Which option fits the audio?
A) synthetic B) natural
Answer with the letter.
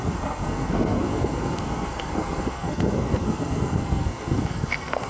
A